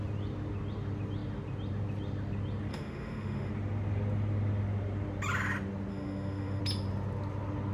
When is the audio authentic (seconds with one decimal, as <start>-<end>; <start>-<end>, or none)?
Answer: 0.0-2.7; 3.5-5.9; 6.6-7.7